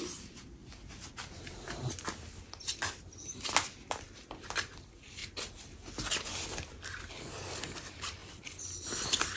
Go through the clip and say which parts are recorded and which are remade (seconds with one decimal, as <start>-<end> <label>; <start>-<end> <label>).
0.0-0.6 remade; 0.6-3.9 recorded; 3.9-5.2 remade; 5.2-6.7 recorded; 6.7-9.4 remade